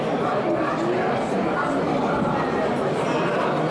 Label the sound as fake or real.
real